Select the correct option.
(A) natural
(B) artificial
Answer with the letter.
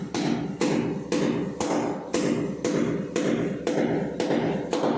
A